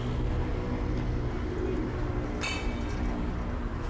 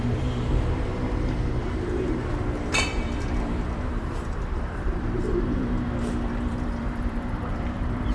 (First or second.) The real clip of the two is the first